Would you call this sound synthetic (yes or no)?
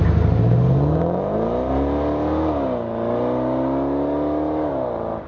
no